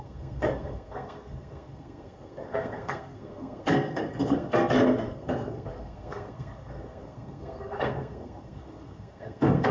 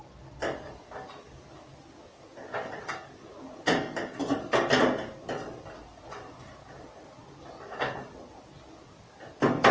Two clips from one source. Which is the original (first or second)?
second